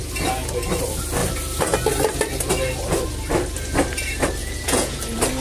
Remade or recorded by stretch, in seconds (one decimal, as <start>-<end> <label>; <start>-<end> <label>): 0.0-4.4 recorded; 4.4-5.0 remade; 5.0-5.4 recorded